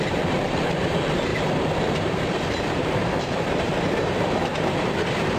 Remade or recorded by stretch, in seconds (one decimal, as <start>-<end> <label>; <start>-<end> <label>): 0.0-1.3 remade; 1.3-1.8 recorded; 1.8-4.5 remade; 4.5-5.4 recorded